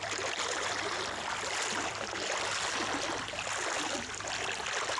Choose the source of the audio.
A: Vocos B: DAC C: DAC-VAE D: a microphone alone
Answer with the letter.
D